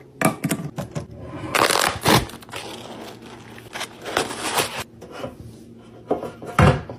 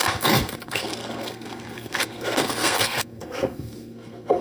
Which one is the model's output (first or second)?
second